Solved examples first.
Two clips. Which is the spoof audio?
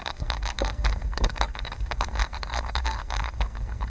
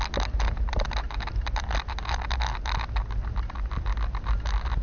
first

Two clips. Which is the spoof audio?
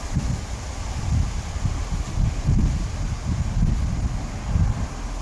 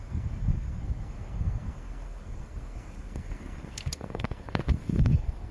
second